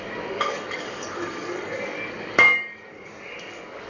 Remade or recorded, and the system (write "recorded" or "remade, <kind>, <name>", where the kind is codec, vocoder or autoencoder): remade, codec, DAC